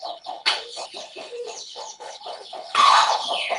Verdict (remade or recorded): remade